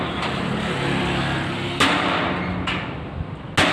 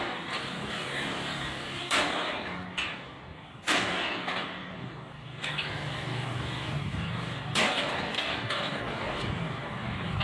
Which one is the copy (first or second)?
second